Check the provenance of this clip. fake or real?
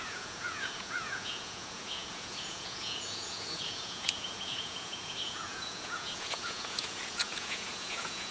fake